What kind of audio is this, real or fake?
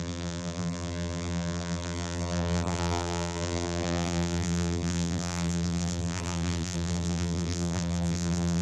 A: fake